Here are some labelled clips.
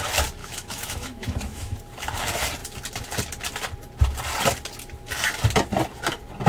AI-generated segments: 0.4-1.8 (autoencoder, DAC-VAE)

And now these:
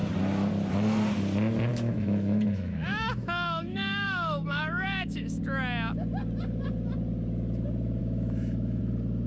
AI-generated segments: 1.7-5.4 (autoencoder, DAC-VAE); 8.0-8.8

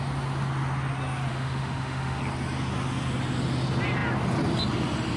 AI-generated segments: 1.3-2.2 (autoencoder, DAC-VAE)